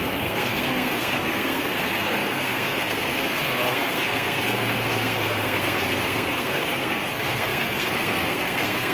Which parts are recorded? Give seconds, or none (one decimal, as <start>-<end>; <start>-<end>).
none

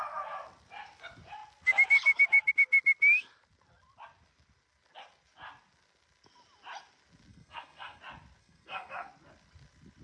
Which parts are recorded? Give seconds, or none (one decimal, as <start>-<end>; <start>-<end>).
0.0-7.3; 8.0-8.4; 9.1-10.0